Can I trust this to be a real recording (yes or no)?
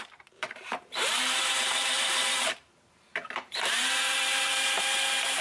no